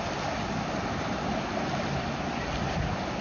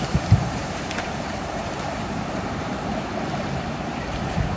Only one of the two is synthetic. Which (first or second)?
second